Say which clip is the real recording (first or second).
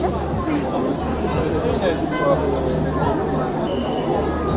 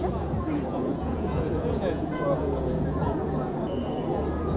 first